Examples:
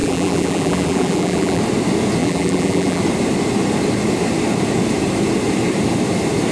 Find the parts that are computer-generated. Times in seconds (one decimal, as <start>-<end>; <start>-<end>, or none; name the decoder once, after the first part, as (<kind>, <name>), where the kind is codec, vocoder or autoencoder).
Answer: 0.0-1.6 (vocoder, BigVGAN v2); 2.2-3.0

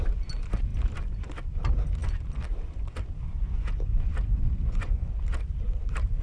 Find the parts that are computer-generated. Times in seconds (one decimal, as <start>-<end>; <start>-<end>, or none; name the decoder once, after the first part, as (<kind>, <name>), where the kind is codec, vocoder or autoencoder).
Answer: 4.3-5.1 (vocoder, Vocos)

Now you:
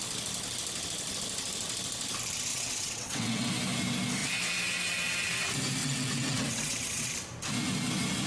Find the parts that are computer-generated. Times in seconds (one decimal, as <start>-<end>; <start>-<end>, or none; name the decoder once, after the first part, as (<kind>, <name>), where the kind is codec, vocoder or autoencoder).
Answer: 2.5-3.5 (vocoder, WaveNeXt); 5.8-7.1

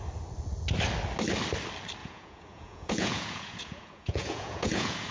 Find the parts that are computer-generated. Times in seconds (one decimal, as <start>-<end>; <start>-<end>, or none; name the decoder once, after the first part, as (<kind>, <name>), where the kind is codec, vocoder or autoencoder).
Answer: 2.0-5.1 (vocoder, Vocos)

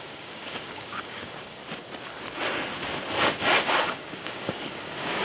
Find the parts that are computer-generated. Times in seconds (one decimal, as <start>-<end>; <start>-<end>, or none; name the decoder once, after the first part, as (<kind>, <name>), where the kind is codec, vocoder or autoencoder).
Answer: 0.0-1.6 (codec, DAC); 3.7-5.2

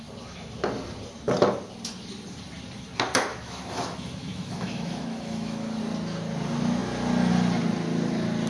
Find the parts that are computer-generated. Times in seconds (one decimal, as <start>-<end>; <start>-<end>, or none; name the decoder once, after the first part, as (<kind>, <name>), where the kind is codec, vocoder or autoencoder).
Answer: 3.3-5.8 (autoencoder, DAC-VAE)